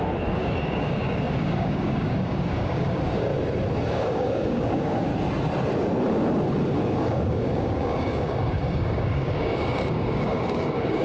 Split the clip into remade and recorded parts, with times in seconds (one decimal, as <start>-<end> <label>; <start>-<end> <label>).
0.0-3.3 remade; 3.3-3.9 recorded; 3.9-5.1 remade; 5.1-6.8 recorded; 6.8-11.0 remade